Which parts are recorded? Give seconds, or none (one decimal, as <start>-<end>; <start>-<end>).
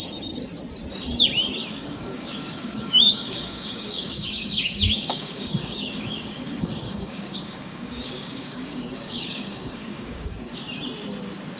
0.4-1.7; 10.5-11.6